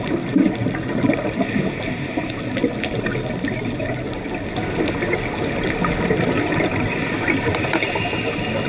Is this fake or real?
real